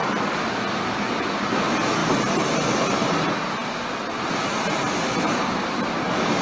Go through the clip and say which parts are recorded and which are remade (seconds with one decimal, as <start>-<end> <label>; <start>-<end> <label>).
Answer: 0.0-6.4 recorded